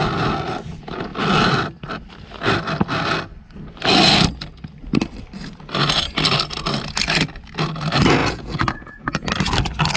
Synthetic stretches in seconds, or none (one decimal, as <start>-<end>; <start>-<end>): 8.2-9.3